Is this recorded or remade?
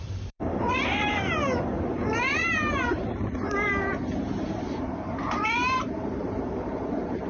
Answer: remade